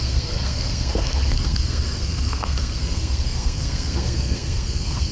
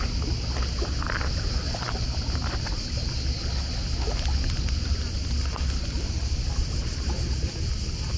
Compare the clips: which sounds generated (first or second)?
first